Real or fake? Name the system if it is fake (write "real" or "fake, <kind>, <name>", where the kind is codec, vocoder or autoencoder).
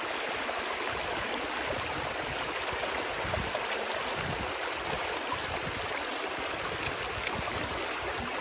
real